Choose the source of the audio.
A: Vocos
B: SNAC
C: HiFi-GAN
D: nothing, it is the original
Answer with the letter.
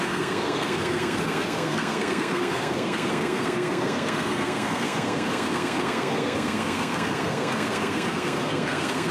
B